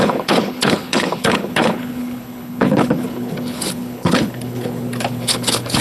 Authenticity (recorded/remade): remade